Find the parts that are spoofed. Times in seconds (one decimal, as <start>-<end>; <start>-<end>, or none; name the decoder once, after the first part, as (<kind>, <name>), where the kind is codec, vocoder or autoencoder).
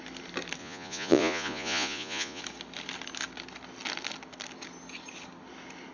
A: 0.6-2.4 (vocoder, Vocos)